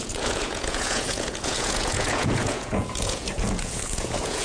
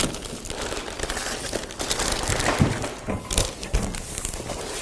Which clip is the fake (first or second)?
first